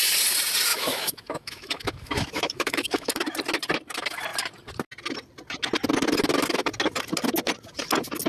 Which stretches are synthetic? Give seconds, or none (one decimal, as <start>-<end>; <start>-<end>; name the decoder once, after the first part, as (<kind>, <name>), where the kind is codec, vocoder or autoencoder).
0.7-3.1 (autoencoder, DAC-VAE)

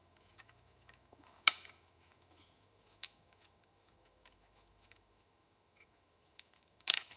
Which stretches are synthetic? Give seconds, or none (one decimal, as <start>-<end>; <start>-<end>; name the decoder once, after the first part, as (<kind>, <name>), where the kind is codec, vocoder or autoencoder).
0.0-7.2 (autoencoder, DAC-VAE)

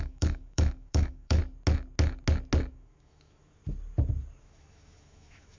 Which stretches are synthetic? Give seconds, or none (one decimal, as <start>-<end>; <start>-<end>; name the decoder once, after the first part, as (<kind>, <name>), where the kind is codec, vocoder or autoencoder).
0.0-1.4 (autoencoder, DAC-VAE); 2.7-3.6; 4.4-5.6

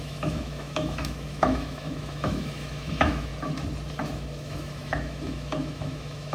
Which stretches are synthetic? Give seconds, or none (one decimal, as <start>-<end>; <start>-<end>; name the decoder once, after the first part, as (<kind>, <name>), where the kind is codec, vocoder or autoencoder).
0.0-3.3 (autoencoder, DAC-VAE); 3.9-6.3